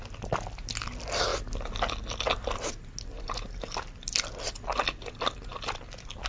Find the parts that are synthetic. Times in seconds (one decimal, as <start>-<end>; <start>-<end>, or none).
none